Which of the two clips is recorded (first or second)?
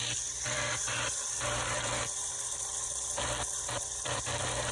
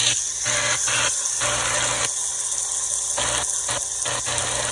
second